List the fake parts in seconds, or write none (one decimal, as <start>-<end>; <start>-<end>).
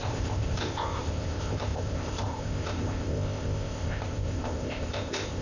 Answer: 0.0-5.4